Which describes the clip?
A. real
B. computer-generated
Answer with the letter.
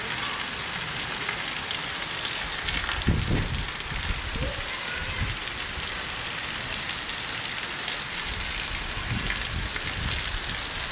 A